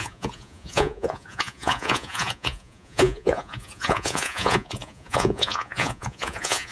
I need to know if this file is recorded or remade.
remade